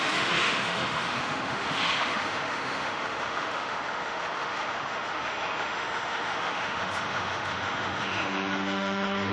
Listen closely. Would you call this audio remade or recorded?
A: remade